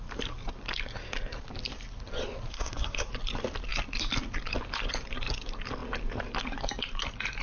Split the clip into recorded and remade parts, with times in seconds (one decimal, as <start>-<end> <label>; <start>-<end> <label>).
0.0-2.5 recorded; 2.5-3.1 remade; 3.1-7.4 recorded